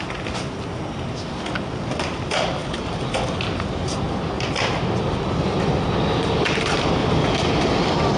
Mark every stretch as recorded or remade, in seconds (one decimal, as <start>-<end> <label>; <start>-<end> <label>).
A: 0.0-8.2 recorded